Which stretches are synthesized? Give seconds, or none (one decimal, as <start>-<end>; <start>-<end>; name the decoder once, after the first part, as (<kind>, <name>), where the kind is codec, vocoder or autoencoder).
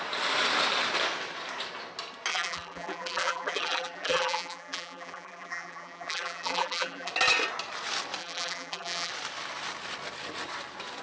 2.3-7.1 (vocoder, BigVGAN v2); 8.2-9.1